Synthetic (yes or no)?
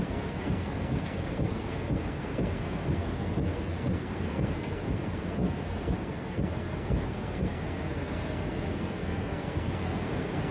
yes